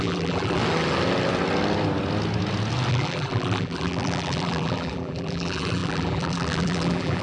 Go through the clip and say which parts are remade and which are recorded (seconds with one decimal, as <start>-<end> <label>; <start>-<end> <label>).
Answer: 0.0-0.6 remade; 0.6-2.9 recorded; 2.9-7.2 remade